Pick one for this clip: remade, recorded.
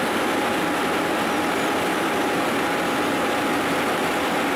recorded